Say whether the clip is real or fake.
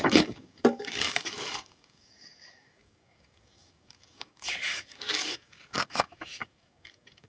fake